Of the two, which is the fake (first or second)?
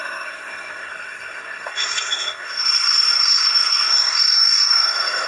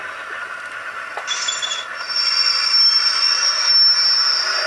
first